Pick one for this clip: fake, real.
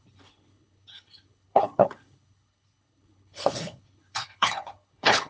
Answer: fake